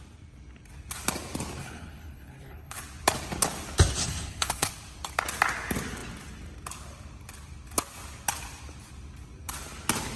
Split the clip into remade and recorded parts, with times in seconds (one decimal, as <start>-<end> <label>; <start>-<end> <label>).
0.0-1.6 recorded; 1.6-2.8 remade; 2.8-4.0 recorded; 4.0-4.7 remade; 4.7-10.2 recorded